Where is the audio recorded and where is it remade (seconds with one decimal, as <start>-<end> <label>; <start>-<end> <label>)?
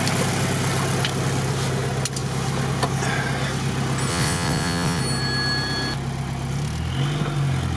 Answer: 0.0-4.1 recorded; 4.1-5.0 remade; 5.0-7.8 recorded